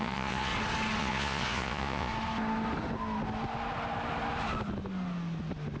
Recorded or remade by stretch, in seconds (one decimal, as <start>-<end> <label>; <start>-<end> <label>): 0.0-0.5 remade; 0.5-1.0 recorded; 1.0-2.1 remade; 2.1-5.8 recorded